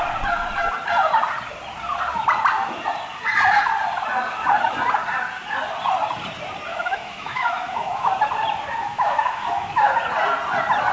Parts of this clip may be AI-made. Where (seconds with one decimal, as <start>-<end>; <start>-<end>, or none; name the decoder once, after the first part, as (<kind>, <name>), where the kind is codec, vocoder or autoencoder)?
6.7-8.1 (autoencoder, DAC-VAE); 8.8-9.9